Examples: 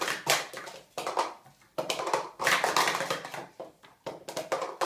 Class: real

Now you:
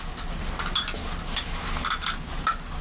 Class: real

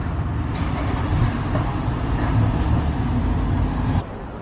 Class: real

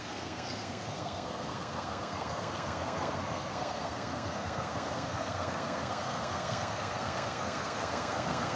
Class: fake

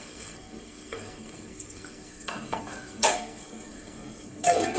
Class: fake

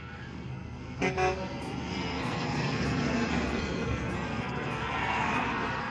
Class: fake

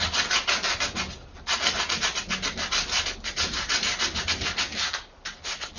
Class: real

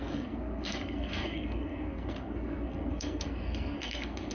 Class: fake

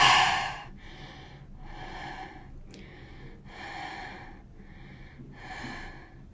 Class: real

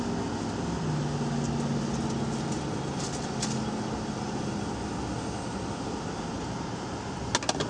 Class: real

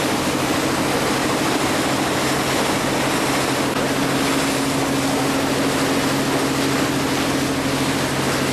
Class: real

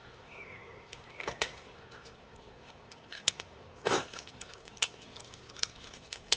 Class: fake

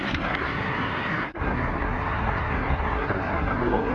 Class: fake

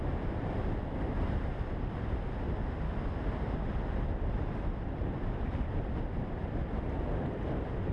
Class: real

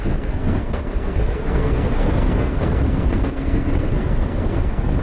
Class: fake